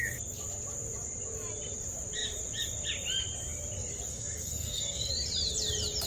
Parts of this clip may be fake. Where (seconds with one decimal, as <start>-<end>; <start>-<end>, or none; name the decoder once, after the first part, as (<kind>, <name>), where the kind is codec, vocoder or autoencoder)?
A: 4.1-5.1 (codec, SNAC)